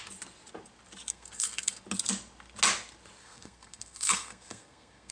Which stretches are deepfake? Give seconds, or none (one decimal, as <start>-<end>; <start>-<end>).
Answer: 1.1-1.8; 3.2-5.1